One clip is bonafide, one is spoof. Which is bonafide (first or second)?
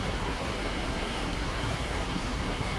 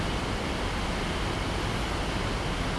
second